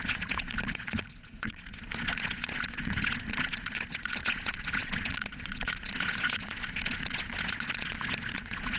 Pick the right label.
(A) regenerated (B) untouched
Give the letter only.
A